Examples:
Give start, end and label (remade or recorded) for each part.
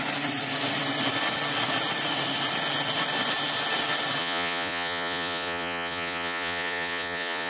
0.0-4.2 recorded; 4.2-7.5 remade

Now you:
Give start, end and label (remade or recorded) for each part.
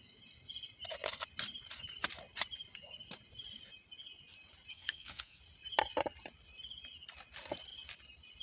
0.0-4.7 recorded; 4.7-5.4 remade; 5.4-8.4 recorded